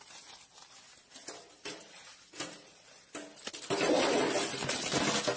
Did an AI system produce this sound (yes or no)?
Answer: no